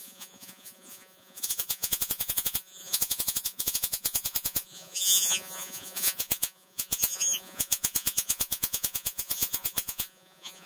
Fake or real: fake